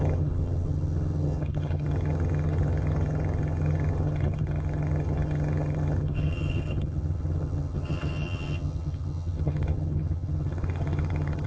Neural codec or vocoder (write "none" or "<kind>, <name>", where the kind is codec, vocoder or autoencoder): vocoder, HiFi-GAN